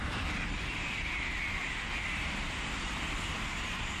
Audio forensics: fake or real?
real